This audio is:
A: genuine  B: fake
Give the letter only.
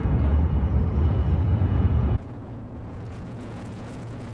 B